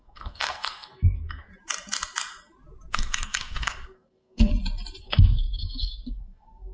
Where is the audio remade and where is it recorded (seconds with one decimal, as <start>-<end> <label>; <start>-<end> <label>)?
0.0-1.5 remade; 1.5-2.9 recorded; 2.9-4.5 remade; 4.5-5.0 recorded; 5.0-6.7 remade